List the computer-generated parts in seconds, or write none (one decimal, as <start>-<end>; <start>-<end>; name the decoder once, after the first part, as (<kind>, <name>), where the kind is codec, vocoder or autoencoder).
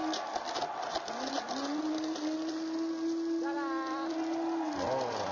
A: none